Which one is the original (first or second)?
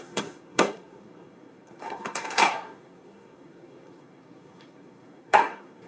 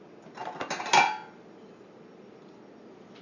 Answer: second